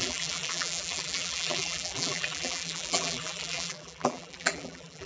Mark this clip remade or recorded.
remade